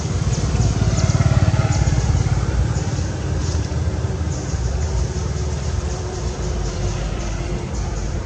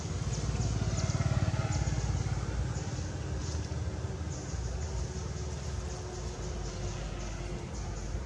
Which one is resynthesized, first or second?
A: first